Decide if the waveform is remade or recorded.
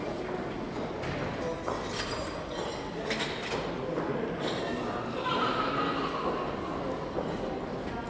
recorded